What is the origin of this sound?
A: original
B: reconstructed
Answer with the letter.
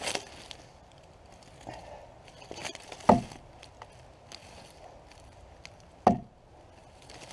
A